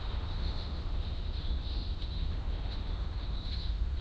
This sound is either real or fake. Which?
fake